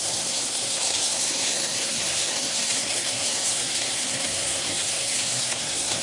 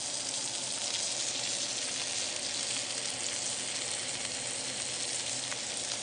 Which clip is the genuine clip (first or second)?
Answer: second